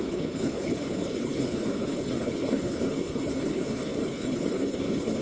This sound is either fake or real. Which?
fake